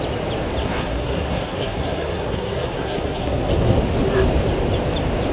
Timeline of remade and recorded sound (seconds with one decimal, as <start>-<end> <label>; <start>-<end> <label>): 0.0-0.6 recorded; 0.6-3.8 remade; 3.8-5.3 recorded